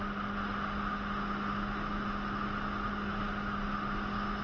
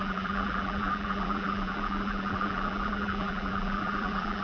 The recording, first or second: first